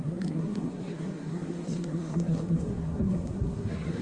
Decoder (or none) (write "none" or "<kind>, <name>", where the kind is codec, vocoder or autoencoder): codec, SNAC